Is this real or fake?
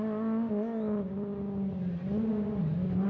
real